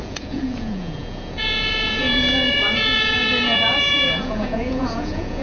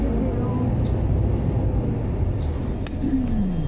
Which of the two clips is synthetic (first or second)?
first